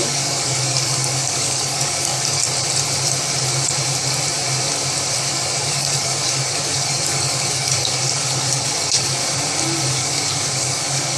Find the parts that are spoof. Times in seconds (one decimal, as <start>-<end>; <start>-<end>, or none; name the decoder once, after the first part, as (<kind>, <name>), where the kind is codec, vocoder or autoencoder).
0.0-2.4 (codec, DAC); 5.3-9.2; 9.9-11.2